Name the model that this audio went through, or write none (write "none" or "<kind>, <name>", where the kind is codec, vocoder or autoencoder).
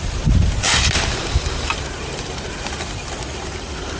none